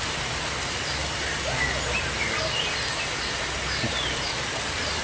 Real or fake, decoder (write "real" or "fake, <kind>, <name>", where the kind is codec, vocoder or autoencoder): real